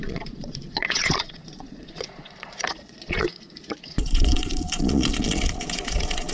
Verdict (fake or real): fake